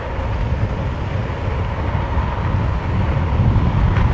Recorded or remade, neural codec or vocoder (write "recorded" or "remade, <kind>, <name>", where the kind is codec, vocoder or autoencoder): recorded